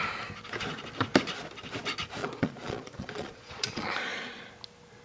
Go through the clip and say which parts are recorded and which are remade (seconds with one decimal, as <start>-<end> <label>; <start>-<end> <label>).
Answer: 0.0-2.2 recorded; 2.2-4.3 remade; 4.3-5.0 recorded